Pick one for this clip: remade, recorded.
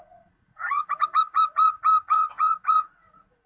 remade